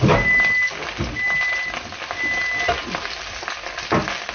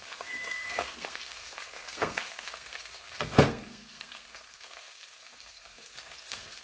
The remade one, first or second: second